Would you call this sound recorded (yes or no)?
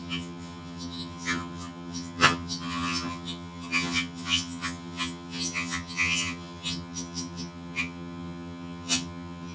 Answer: no